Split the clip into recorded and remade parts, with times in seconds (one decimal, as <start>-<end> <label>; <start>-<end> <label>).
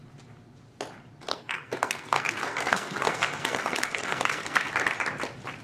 0.0-1.3 recorded; 1.3-4.7 remade; 4.7-5.6 recorded